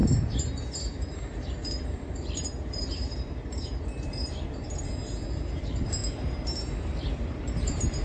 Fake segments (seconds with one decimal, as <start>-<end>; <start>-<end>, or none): 0.0-5.0; 5.6-8.0